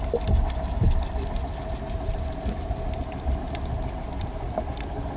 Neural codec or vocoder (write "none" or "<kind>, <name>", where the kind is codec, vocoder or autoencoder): none